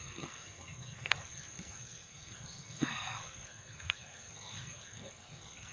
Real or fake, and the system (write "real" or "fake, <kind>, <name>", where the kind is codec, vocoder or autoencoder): fake, codec, SNAC